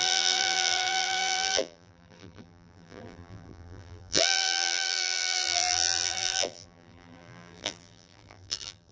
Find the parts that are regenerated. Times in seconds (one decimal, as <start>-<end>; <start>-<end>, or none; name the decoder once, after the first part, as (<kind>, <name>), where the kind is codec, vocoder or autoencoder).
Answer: 0.0-8.9 (vocoder, BigVGAN v2)